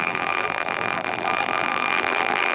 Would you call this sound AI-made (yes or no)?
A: yes